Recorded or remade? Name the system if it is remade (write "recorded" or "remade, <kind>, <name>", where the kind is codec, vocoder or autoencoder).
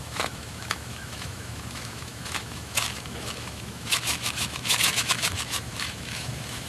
remade, autoencoder, DAC-VAE